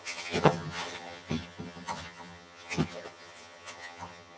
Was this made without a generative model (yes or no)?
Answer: no